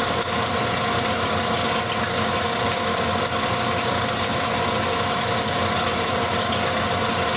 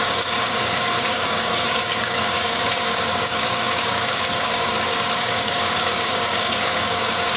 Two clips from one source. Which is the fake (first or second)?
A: second